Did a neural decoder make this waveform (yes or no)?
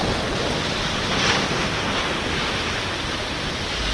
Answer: no